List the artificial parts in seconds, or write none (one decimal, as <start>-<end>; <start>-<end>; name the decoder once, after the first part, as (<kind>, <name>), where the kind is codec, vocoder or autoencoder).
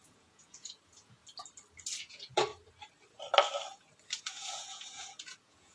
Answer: 0.0-1.2 (vocoder, Vocos); 2.0-2.5; 4.2-5.7